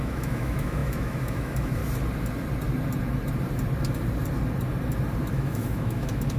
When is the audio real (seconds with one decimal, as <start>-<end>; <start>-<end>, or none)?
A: 1.8-5.3